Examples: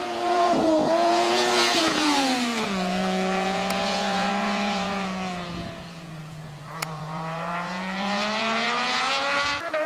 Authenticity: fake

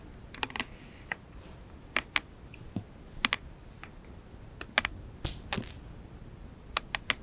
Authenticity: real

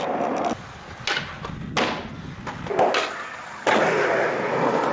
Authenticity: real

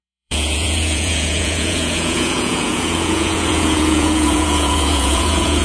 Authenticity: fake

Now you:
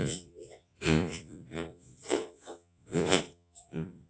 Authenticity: fake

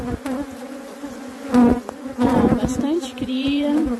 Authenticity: fake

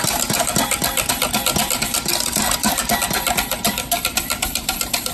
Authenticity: real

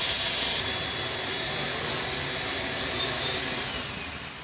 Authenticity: real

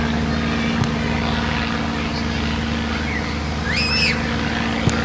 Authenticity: real